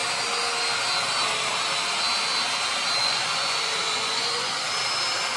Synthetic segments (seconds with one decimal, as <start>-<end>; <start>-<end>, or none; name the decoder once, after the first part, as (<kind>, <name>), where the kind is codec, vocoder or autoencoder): 3.0-4.6 (vocoder, Vocos)